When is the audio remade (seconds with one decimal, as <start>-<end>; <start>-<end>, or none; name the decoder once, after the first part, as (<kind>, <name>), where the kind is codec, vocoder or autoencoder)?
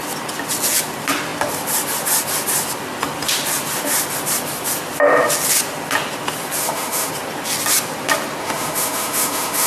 6.6-7.1 (autoencoder, DAC-VAE); 8.4-9.7